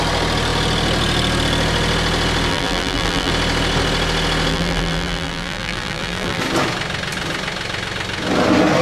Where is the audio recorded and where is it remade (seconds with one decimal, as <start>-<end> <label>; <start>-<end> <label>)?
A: 0.0-2.5 recorded; 2.5-3.3 remade; 3.3-4.5 recorded; 4.5-6.4 remade; 6.4-8.8 recorded